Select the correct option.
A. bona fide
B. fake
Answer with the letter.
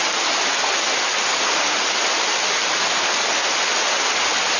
A